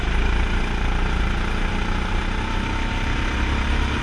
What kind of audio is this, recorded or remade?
recorded